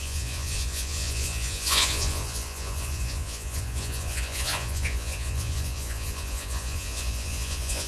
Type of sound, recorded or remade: remade